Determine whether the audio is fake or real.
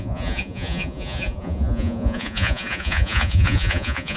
fake